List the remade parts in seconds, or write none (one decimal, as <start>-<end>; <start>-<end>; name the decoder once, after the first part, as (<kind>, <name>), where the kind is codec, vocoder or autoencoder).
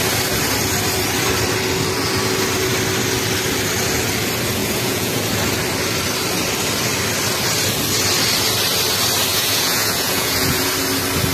4.6-5.2 (vocoder, Vocos); 9.3-10.7